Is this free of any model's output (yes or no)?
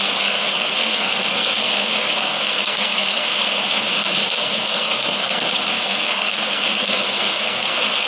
no